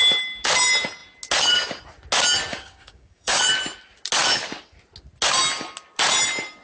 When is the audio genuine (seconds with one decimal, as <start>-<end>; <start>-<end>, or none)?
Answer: 0.0-2.5; 3.4-6.6

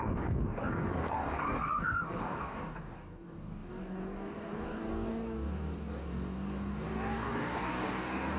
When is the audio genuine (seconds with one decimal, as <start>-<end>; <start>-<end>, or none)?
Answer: none

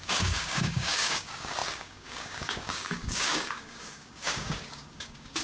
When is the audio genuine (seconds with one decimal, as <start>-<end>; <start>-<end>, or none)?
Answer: none

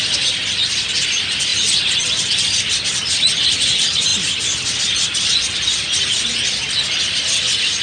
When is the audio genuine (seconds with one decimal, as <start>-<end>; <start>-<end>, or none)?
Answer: 0.0-7.8

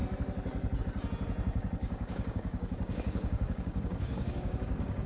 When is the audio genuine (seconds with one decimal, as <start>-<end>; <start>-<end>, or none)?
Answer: 0.0-1.8

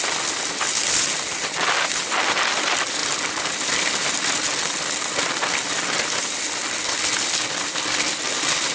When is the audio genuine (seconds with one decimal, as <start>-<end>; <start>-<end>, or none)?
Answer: 0.0-8.7

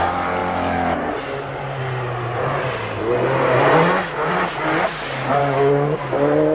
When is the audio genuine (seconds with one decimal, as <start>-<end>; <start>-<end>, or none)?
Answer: 0.0-5.4; 6.0-6.5